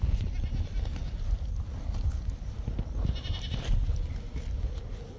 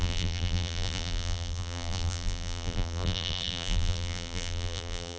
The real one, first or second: first